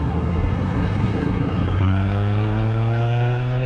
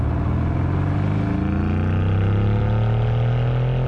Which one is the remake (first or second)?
first